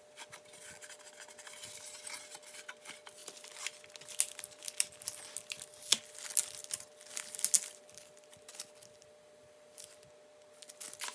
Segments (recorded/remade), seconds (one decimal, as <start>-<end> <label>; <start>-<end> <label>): 0.0-11.1 recorded